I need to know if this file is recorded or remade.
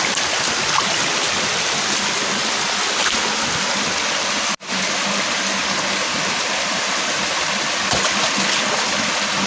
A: recorded